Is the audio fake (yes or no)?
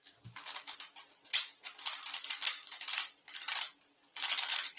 no